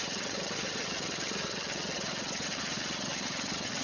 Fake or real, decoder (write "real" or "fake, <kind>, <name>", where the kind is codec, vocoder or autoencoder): fake, vocoder, HiFi-GAN